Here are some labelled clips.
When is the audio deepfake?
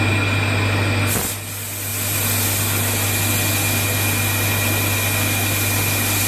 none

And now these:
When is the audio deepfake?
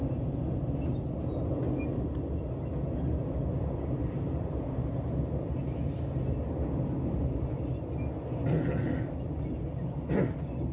none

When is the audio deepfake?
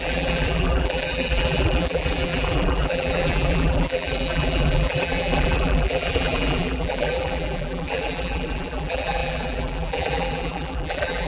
0.0-11.3 (vocoder, BigVGAN v2)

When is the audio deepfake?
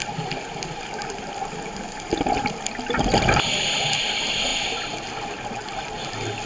none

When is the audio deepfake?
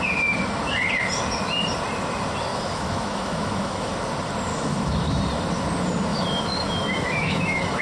2.5-3.9 (autoencoder, DAC-VAE); 4.5-5.2; 6.1-7.8